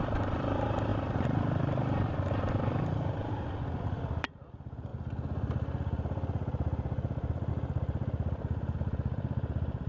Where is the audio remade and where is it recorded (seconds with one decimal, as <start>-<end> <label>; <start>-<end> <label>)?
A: 0.0-4.9 remade; 4.9-7.5 recorded; 7.5-9.9 remade

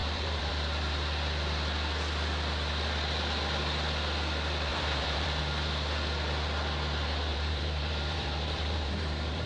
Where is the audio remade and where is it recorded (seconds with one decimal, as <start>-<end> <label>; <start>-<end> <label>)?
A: 0.0-0.5 remade; 0.5-4.7 recorded; 4.7-5.4 remade; 5.4-7.3 recorded; 7.3-9.5 remade